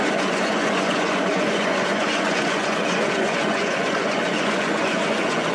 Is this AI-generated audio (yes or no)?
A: yes